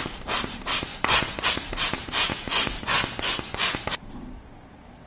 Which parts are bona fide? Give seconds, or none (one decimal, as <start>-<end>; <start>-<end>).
0.0-0.9; 1.5-2.3; 3.8-5.1

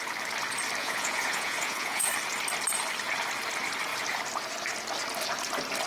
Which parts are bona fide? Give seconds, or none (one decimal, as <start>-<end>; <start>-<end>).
0.0-0.8; 2.1-5.9

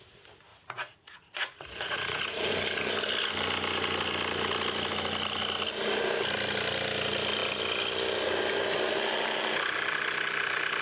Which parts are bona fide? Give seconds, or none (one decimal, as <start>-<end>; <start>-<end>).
0.0-0.5; 2.5-10.8

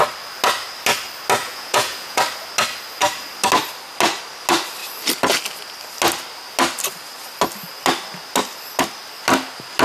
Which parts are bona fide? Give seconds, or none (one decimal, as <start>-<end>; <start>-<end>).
0.0-1.4; 2.2-9.8

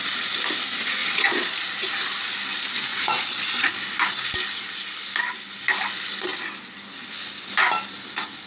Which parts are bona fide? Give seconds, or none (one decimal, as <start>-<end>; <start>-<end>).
0.0-1.0; 1.9-2.9; 3.9-8.5

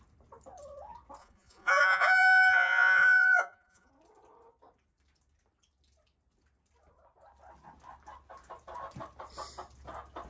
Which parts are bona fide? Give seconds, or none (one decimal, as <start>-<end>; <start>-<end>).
0.0-1.2; 3.9-10.3

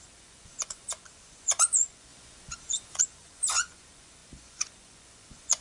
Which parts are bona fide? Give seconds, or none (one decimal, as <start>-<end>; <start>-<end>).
none